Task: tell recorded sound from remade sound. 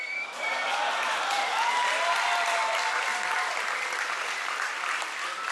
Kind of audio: remade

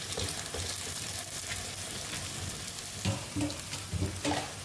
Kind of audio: recorded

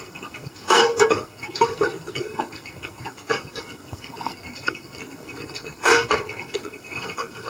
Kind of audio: remade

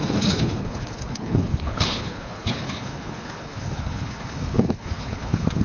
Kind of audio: remade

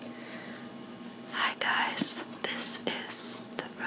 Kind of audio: recorded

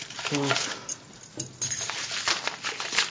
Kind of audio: recorded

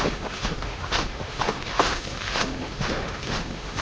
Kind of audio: remade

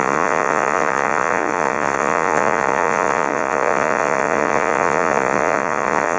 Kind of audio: remade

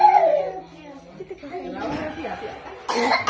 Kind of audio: recorded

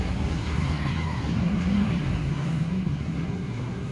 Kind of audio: remade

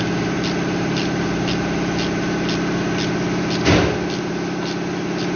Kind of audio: recorded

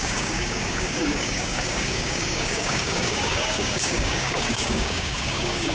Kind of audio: remade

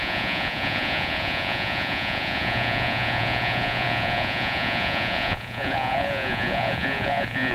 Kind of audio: remade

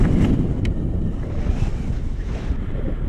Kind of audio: remade